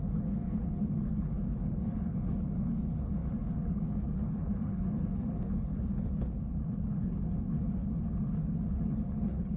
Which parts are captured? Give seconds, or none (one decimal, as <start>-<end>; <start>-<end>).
none